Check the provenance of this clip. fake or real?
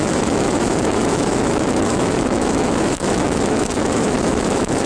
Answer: fake